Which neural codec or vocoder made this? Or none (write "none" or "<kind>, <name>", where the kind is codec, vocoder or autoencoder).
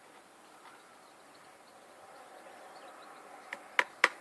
none